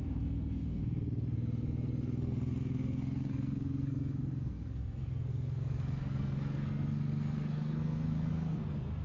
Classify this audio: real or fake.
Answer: fake